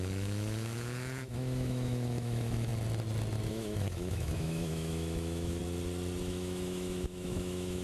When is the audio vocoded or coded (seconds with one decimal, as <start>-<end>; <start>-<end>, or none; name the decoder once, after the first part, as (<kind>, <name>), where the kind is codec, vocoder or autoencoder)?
0.0-2.7 (autoencoder, DAC-VAE); 3.5-5.6; 6.2-7.8